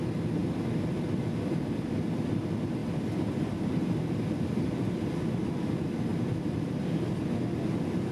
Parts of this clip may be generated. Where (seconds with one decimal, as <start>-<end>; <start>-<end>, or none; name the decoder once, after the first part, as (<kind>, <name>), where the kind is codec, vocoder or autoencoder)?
0.4-2.4 (vocoder, BigVGAN v2); 2.8-5.1; 6.1-6.8